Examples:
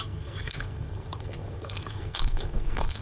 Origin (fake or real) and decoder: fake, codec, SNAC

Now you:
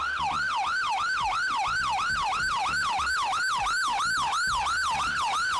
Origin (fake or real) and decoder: real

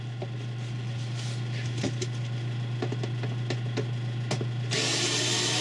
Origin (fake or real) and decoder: real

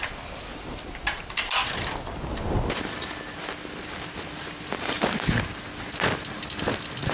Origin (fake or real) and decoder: real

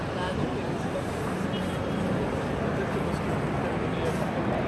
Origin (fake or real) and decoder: real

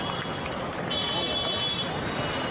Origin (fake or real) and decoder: real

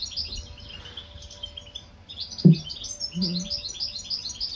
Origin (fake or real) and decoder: real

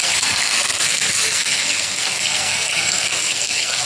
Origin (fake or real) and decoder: fake, codec, SNAC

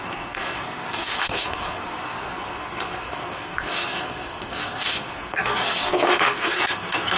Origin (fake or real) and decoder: fake, codec, SNAC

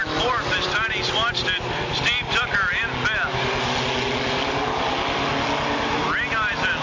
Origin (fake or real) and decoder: real